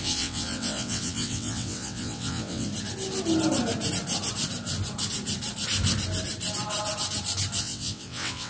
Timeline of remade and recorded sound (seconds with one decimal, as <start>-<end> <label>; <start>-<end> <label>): 0.0-2.7 remade; 2.7-7.6 recorded; 7.6-8.5 remade